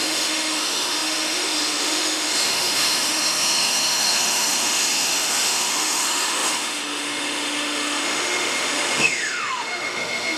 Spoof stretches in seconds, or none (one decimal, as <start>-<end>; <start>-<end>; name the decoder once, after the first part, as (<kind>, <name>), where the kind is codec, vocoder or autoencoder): 0.0-10.4 (autoencoder, DAC-VAE)